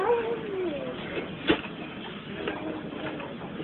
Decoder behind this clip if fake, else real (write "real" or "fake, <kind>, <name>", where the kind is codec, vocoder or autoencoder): real